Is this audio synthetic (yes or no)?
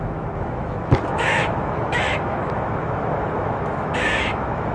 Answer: yes